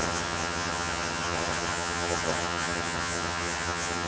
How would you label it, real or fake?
fake